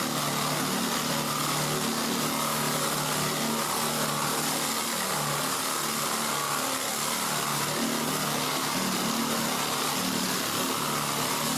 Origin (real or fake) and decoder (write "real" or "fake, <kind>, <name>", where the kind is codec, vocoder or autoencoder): real